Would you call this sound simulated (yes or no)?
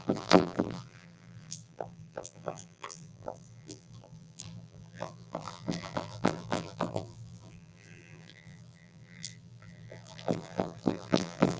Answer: yes